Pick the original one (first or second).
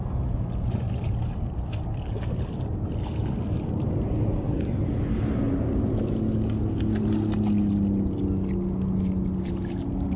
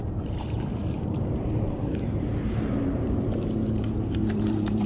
first